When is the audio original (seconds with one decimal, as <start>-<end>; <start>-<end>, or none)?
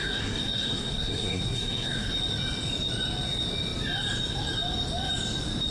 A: 2.1-5.7